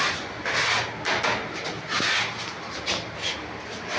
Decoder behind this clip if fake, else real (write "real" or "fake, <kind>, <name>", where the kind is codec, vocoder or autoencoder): real